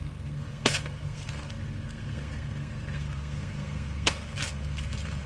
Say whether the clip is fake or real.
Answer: fake